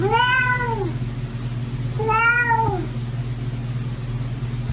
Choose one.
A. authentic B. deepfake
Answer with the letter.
A